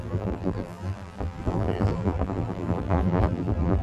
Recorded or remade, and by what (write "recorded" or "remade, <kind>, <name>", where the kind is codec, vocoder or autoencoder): remade, vocoder, BigVGAN v2